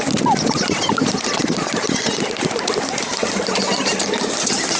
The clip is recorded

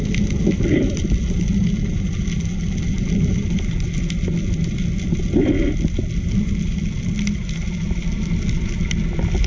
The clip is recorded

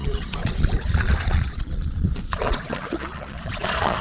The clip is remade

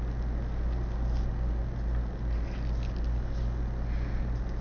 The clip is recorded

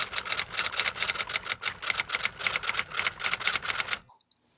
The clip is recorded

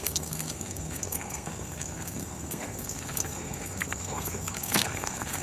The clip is remade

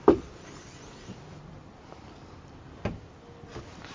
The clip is recorded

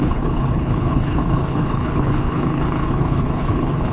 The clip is remade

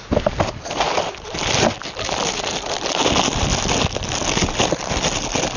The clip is recorded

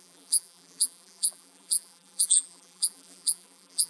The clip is remade